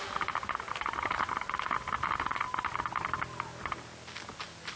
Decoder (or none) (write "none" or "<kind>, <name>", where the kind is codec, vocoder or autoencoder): none